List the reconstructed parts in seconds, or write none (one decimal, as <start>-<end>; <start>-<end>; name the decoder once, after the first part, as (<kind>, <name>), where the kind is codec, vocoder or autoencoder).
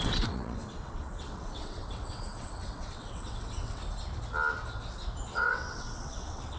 0.0-3.8 (vocoder, WaveNeXt); 5.3-6.6